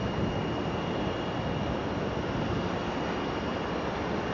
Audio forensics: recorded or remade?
recorded